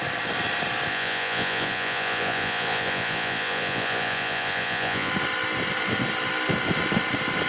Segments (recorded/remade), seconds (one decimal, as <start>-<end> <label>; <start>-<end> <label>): 0.0-0.9 recorded; 0.9-5.1 remade; 5.1-7.5 recorded